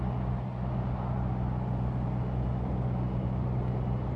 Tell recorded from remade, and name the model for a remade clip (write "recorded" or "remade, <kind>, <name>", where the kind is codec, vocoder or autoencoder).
recorded